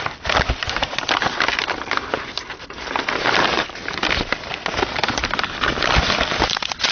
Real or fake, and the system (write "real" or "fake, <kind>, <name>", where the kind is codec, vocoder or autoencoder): real